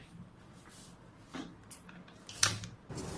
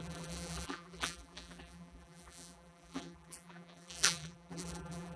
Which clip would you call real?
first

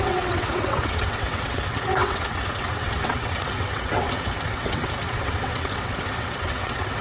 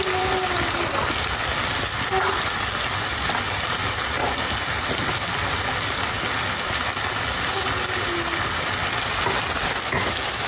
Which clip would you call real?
second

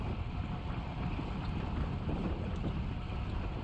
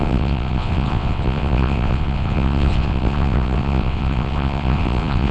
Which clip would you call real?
first